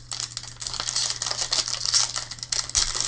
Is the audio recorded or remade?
recorded